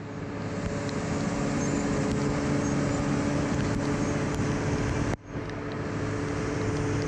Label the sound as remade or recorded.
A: recorded